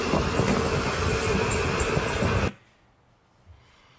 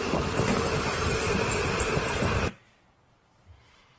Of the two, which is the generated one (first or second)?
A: second